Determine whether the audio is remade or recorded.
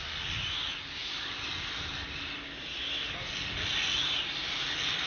recorded